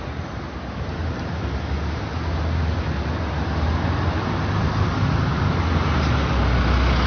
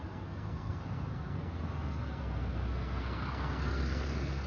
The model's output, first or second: second